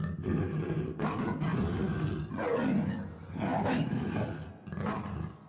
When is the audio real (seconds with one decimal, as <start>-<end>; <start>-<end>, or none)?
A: 0.0-3.5; 4.1-5.5

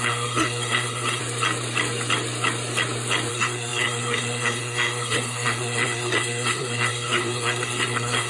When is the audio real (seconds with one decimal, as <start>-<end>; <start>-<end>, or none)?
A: 1.2-3.3

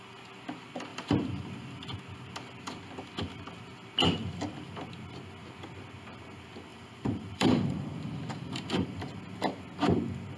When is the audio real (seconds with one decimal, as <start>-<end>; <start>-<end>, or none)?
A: 0.0-0.9; 2.0-4.2; 4.8-6.7; 9.2-10.4

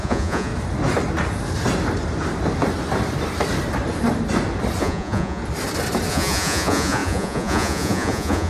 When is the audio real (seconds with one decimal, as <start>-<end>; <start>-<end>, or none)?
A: 0.5-4.8; 5.4-6.1

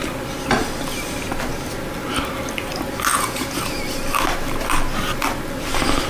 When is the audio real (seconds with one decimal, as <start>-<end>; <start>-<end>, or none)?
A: 0.0-3.1; 3.6-6.1

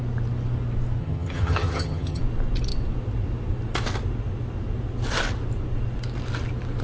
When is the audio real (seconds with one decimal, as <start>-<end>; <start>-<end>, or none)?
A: 0.0-1.0; 2.2-6.8

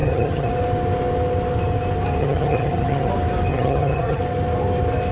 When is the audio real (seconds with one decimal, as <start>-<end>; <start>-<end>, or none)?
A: 0.5-2.2; 3.1-3.5; 4.2-5.1

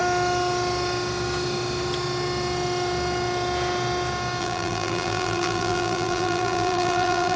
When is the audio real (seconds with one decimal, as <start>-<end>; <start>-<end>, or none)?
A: 0.0-4.4